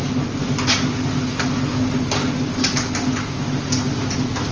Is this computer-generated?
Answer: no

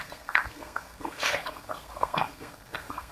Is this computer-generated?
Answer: yes